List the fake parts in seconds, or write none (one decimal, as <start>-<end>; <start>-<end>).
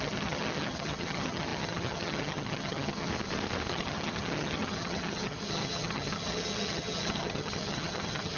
0.0-3.1; 3.7-8.4